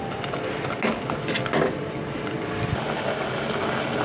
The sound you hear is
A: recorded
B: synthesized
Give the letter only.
A